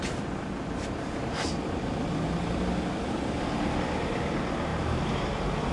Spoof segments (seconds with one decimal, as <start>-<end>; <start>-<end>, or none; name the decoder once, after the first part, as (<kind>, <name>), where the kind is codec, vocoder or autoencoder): 4.7-5.7 (vocoder, BigVGAN v2)